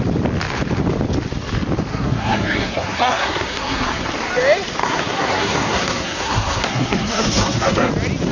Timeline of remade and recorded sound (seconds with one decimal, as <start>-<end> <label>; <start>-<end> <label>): 0.0-1.9 recorded; 1.9-4.1 remade; 4.1-4.8 recorded; 4.8-7.9 remade; 7.9-8.3 recorded